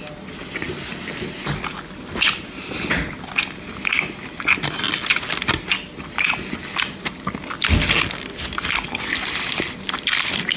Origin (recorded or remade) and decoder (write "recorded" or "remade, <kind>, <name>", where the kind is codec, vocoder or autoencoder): recorded